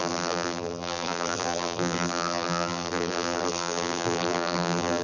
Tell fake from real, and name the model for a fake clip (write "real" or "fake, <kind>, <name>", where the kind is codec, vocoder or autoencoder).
fake, vocoder, BigVGAN v2